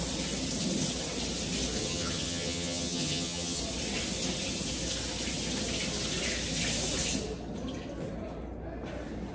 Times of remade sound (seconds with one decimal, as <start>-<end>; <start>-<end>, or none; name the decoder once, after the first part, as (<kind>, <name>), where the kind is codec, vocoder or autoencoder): 1.8-3.6 (vocoder, HiFi-GAN)